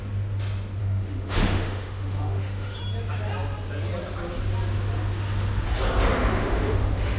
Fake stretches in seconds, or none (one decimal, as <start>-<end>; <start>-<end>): 0.8-2.8; 6.3-7.2

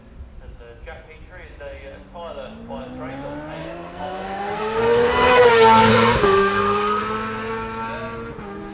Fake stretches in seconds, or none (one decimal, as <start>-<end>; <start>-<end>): 3.6-5.5; 5.9-7.0